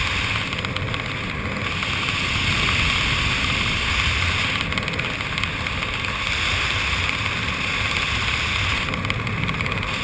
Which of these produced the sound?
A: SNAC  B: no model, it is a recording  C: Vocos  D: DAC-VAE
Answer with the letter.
B